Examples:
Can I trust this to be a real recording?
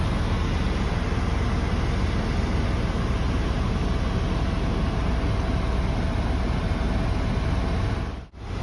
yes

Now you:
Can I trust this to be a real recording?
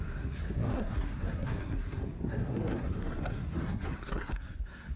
no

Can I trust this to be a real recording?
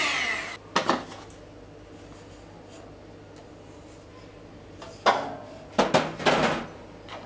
yes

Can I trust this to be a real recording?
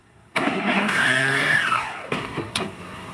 no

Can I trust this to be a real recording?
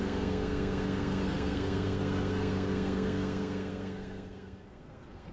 no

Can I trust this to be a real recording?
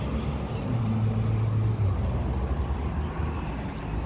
yes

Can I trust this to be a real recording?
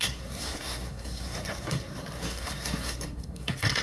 no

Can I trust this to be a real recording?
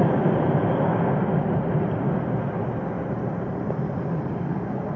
yes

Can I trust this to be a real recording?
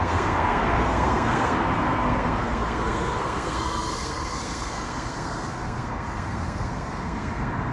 no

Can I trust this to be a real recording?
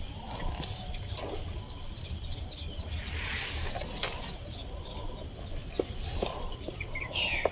yes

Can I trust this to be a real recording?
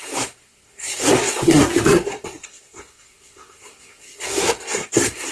no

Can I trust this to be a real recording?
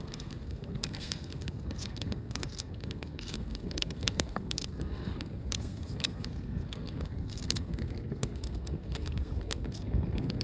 no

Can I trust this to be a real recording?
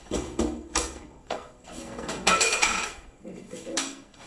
no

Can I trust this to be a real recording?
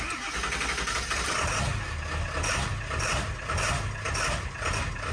yes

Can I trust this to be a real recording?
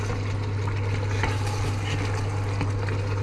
yes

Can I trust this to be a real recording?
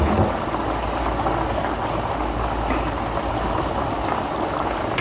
yes